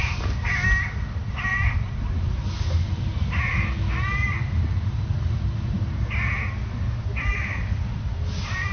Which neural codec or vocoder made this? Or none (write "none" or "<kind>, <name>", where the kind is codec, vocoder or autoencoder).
none